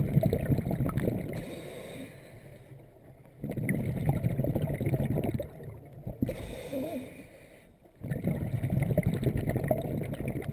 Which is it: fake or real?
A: real